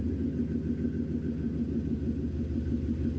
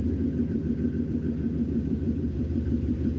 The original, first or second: first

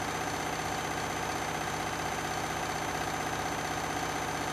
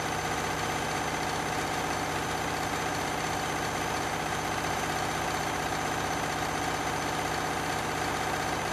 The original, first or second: first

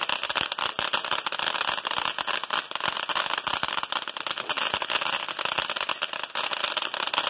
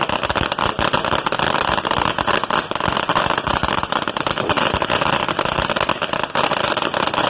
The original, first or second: first